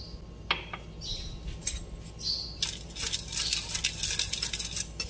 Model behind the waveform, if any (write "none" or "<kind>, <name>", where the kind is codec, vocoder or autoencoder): none